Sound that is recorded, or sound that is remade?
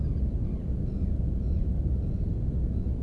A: recorded